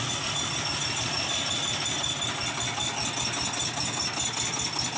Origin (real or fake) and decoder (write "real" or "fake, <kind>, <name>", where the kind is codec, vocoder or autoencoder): real